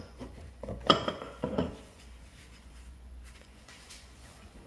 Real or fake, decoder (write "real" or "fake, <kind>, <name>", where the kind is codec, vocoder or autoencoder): fake, vocoder, Vocos